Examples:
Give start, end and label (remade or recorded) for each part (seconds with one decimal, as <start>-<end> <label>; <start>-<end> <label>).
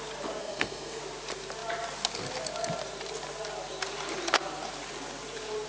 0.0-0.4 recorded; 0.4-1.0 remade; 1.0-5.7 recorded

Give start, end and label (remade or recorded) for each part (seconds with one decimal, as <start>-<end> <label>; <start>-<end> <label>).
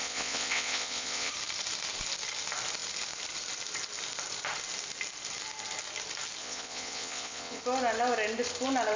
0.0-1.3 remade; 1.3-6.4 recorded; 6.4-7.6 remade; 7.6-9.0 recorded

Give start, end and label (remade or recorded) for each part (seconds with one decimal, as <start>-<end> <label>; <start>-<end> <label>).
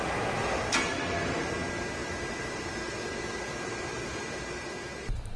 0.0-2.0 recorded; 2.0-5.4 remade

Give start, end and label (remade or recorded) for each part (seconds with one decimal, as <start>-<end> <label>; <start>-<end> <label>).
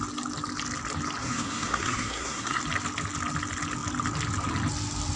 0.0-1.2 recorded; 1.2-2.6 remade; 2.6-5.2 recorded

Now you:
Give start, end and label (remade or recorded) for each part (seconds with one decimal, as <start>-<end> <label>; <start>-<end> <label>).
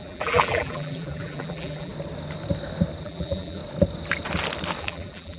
0.0-1.9 remade; 1.9-3.0 recorded; 3.0-3.6 remade; 3.6-4.8 recorded; 4.8-5.4 remade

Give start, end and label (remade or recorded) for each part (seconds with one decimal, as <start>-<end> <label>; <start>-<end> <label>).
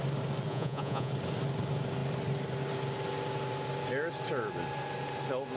0.0-0.5 recorded; 0.5-1.1 remade; 1.1-5.6 recorded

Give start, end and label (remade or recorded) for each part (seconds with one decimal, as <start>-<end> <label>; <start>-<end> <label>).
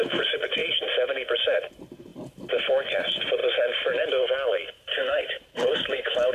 0.0-0.6 remade; 0.6-1.7 recorded; 1.7-2.1 remade; 2.1-2.9 recorded; 2.9-6.3 remade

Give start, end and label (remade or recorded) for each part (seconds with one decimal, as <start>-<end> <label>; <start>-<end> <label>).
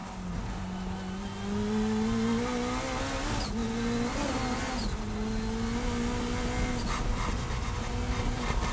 0.0-8.7 recorded